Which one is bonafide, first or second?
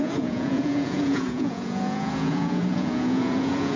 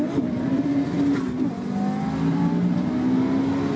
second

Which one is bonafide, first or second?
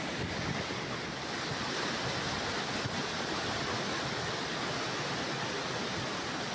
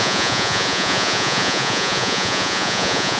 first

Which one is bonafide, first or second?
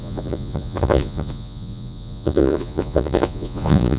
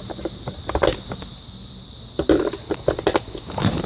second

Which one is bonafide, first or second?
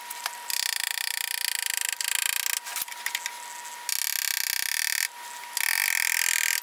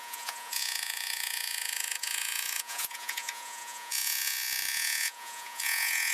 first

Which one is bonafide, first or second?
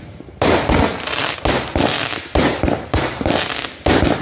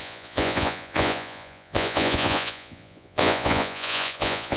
first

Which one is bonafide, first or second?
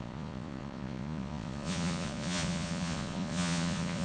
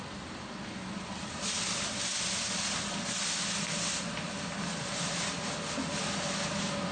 second